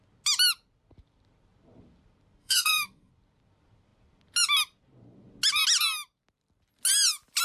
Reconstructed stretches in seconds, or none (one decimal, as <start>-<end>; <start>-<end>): 2.4-3.1